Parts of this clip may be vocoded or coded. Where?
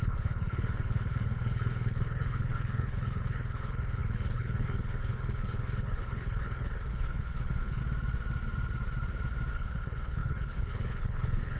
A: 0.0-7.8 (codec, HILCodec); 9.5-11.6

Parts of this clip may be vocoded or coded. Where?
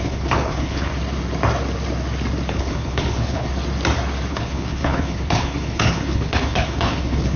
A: 0.0-0.9 (codec, HILCodec); 2.5-3.5; 4.3-7.4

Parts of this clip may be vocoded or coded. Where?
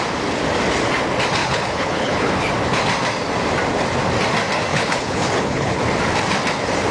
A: 1.4-2.3 (codec, HILCodec); 4.7-5.8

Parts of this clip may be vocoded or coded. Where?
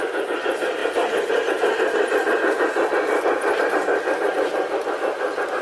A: none